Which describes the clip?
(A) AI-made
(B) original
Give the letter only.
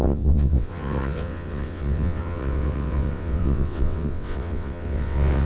A